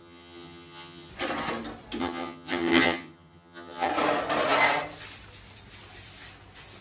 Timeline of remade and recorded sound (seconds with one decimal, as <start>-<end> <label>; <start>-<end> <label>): 0.0-1.1 remade; 1.1-2.0 recorded; 2.0-3.9 remade; 3.9-6.8 recorded